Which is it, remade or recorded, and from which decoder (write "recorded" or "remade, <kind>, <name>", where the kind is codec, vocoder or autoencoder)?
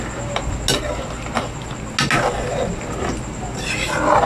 recorded